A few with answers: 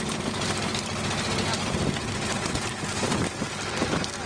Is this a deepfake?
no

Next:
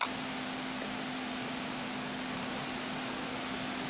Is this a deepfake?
no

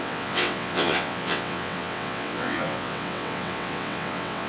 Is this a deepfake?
yes